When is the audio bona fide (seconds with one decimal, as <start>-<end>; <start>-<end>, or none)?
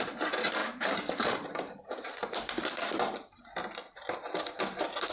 0.0-0.6; 2.7-5.1